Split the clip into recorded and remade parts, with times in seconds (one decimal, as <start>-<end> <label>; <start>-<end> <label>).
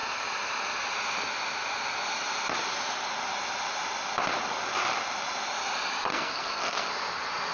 0.0-6.1 recorded; 6.1-6.9 remade; 6.9-7.5 recorded